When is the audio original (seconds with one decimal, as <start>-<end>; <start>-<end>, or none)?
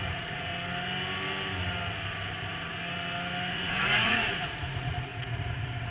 0.5-3.5